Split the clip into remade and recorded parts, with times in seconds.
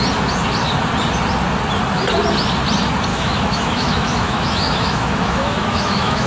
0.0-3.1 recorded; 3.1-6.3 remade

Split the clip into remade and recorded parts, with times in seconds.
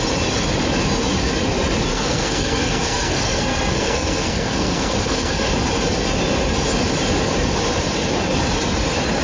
0.0-1.9 recorded; 1.9-5.5 remade; 5.5-9.2 recorded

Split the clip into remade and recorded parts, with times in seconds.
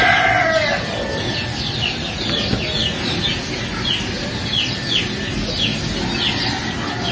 0.0-7.1 recorded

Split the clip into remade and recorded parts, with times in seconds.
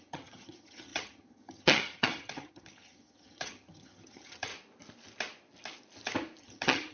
0.0-4.5 remade; 4.5-6.4 recorded; 6.4-6.9 remade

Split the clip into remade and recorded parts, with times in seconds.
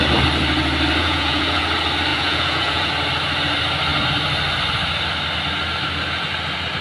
0.0-1.0 recorded; 1.0-1.6 remade; 1.6-2.1 recorded; 2.1-2.9 remade; 2.9-6.8 recorded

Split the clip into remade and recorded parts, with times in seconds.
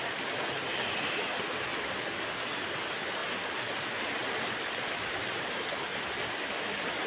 0.0-3.2 recorded; 3.2-5.2 remade; 5.2-7.1 recorded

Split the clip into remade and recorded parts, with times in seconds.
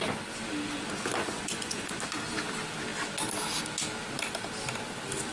0.0-1.2 recorded; 1.2-2.0 remade; 2.0-5.3 recorded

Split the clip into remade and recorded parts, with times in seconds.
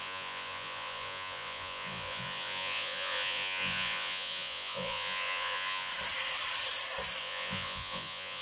0.0-5.9 remade; 5.9-7.2 recorded; 7.2-8.4 remade